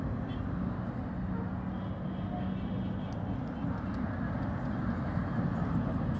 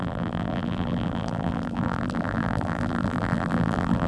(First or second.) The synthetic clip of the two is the second